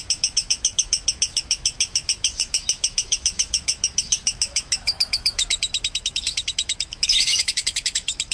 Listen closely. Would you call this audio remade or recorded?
remade